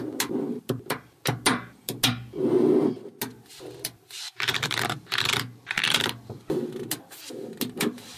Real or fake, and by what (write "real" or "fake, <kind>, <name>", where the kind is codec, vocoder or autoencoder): real